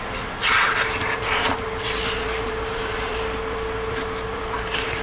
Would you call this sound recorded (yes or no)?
no